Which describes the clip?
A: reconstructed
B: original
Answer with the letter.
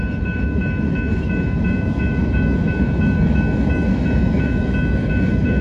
A